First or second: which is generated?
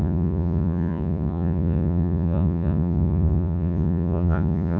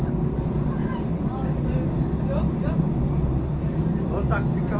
first